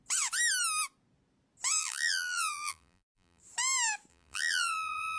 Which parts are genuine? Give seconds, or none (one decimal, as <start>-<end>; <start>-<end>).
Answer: 0.0-1.8; 3.4-4.1